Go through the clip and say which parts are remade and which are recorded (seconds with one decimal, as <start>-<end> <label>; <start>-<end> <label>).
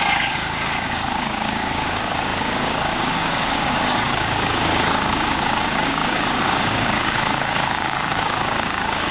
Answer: 0.0-9.1 remade